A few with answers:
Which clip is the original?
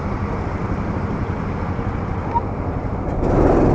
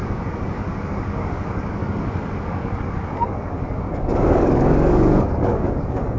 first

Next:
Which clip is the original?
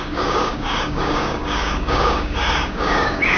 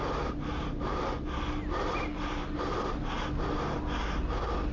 second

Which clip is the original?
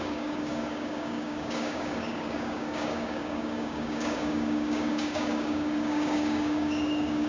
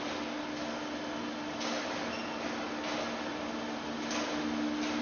second